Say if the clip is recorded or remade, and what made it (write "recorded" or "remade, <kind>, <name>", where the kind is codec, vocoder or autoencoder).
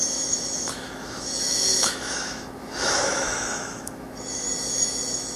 remade, autoencoder, DAC-VAE